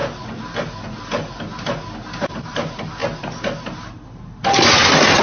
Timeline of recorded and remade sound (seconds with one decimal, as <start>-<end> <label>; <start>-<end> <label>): 0.0-2.3 recorded; 2.3-3.0 remade; 3.0-5.2 recorded

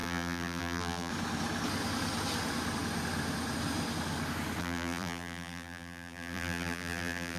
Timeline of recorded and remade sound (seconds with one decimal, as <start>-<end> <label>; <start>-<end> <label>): 0.0-1.1 remade; 1.1-4.6 recorded; 4.6-7.4 remade

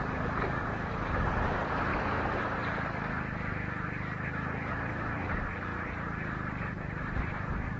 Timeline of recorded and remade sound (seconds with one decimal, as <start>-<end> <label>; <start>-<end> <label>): 0.0-1.9 remade; 1.9-4.7 recorded; 4.7-5.7 remade; 5.7-6.6 recorded; 6.6-7.8 remade